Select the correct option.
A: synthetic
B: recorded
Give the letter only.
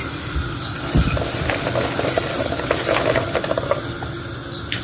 B